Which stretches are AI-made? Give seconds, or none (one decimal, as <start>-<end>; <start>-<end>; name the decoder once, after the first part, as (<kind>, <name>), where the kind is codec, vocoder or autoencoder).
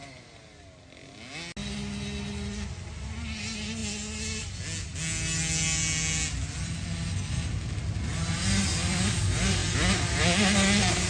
none